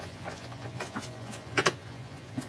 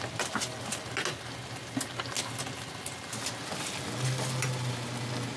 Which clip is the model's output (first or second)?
first